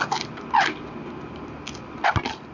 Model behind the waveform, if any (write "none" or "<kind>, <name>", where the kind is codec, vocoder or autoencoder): none